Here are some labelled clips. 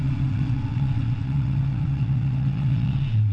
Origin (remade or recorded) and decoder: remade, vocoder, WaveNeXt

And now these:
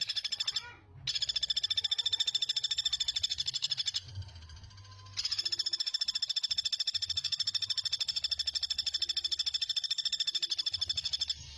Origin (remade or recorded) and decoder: recorded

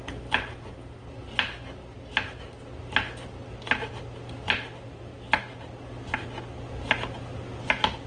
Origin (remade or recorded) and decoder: recorded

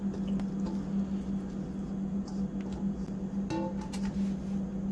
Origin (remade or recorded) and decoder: recorded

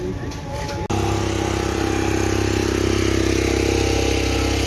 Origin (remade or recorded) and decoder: recorded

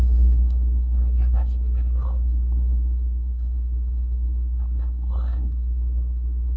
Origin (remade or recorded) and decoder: remade, codec, SNAC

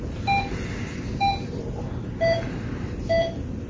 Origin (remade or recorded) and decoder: recorded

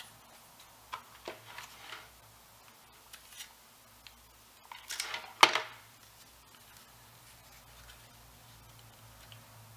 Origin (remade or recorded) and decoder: recorded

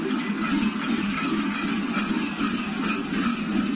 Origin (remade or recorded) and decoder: recorded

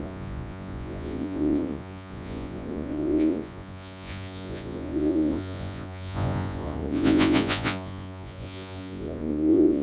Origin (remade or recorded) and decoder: remade, vocoder, Vocos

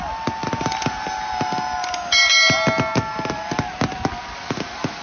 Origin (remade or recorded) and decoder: recorded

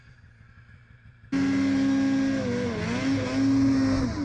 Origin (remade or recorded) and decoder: recorded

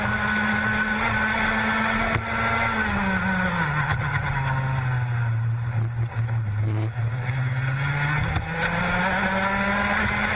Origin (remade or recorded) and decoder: recorded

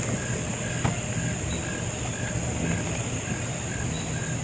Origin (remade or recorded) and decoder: recorded